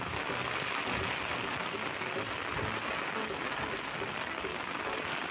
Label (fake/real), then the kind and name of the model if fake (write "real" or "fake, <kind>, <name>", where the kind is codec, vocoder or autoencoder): real